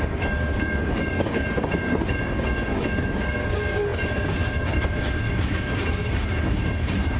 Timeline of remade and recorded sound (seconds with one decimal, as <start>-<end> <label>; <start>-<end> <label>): 0.0-7.2 remade